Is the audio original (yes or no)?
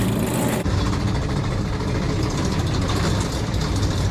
yes